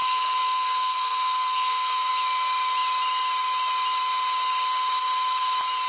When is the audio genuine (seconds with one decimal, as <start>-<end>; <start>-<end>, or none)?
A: 2.1-5.9